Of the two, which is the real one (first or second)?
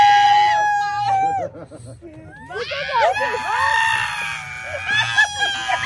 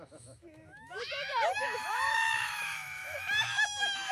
first